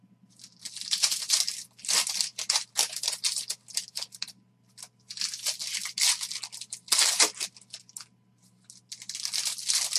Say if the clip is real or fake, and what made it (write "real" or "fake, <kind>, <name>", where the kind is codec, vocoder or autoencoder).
real